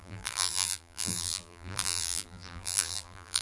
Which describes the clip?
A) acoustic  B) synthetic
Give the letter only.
B